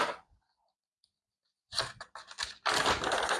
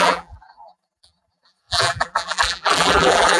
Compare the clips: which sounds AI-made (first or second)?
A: second